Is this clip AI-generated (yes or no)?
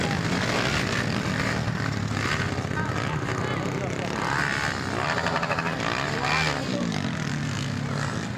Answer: no